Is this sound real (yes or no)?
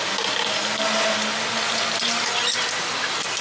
yes